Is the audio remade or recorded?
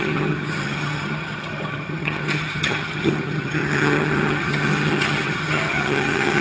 remade